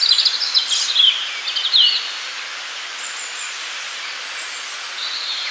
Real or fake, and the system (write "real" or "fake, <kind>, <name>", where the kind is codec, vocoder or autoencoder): real